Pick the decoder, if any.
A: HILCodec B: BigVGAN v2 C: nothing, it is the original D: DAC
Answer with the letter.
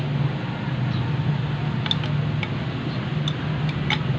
C